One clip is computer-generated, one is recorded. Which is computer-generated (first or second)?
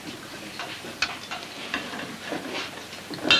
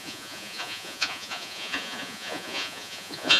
second